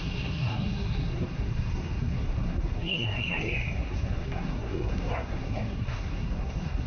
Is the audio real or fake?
fake